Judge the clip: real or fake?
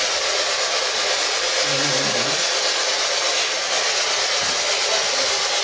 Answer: real